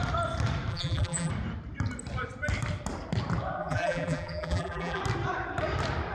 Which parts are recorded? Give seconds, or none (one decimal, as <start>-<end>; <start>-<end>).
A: 0.0-0.7; 1.3-3.6; 5.0-6.1